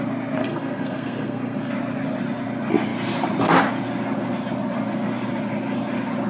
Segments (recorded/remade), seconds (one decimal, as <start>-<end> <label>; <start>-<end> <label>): 0.0-0.4 recorded; 0.4-1.7 remade; 1.7-6.3 recorded